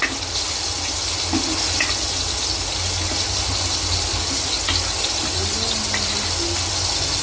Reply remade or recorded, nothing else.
recorded